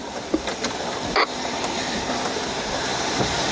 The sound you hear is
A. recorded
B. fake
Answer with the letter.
A